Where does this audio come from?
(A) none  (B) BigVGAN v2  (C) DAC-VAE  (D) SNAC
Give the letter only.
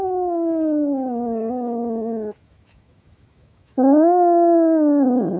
C